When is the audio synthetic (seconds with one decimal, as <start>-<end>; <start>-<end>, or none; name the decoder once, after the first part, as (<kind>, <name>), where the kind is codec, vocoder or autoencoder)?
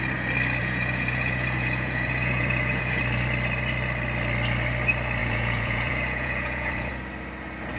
0.6-3.0 (vocoder, Vocos); 5.2-6.9